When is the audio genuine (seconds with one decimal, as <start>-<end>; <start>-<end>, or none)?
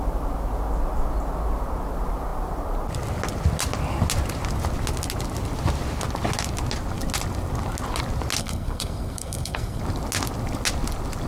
0.0-8.4; 9.8-11.3